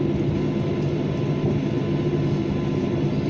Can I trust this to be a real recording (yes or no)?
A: yes